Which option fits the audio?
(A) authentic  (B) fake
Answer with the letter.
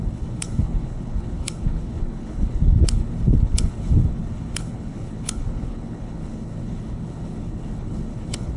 B